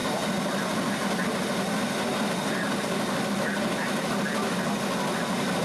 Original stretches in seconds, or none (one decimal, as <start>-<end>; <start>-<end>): 0.0-5.6